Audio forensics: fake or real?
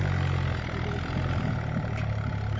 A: real